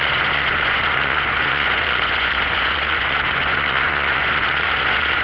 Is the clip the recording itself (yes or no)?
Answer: no